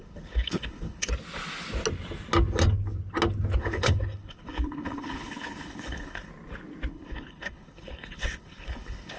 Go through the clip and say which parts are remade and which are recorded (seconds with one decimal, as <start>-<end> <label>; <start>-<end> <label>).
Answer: 0.0-1.1 remade; 1.1-3.6 recorded; 3.6-6.3 remade; 6.3-6.9 recorded; 6.9-9.2 remade